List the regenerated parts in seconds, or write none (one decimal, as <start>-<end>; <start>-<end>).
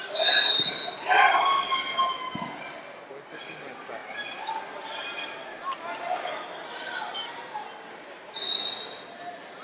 none